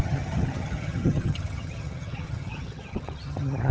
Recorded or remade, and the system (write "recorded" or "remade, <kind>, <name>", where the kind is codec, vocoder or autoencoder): remade, vocoder, HiFi-GAN